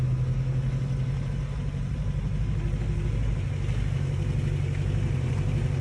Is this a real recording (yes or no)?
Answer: yes